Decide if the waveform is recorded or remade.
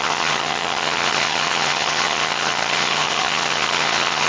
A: remade